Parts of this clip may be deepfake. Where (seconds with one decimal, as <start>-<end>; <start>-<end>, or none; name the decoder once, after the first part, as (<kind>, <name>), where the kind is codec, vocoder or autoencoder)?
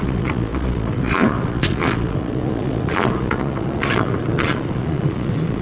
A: 0.0-5.6 (vocoder, Vocos)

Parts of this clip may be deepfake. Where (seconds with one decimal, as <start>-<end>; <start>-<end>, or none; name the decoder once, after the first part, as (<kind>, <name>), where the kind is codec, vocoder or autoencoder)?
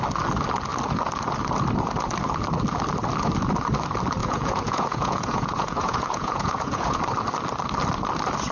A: 4.2-7.0 (vocoder, Vocos)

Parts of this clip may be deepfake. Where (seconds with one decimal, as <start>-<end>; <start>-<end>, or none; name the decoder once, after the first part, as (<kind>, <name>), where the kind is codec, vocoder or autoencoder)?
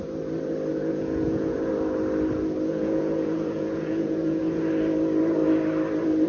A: 0.7-1.7 (vocoder, Vocos); 2.7-4.6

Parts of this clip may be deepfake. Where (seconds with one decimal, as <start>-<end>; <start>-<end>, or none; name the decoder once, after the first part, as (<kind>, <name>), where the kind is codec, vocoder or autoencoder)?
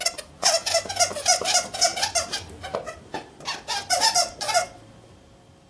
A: none